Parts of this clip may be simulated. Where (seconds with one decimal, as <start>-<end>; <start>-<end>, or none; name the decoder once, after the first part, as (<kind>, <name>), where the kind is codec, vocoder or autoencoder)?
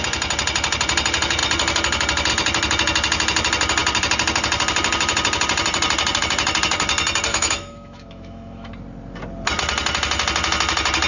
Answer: 7.3-8.7 (autoencoder, DAC-VAE)